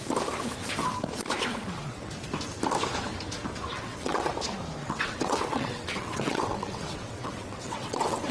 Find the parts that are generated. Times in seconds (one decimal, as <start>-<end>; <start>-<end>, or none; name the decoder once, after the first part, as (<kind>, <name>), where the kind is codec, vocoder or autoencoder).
1.5-2.1 (vocoder, WaveNeXt); 3.7-4.3; 4.8-8.3